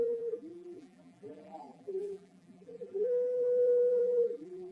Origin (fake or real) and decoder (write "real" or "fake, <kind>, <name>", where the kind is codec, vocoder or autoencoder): fake, vocoder, BigVGAN v2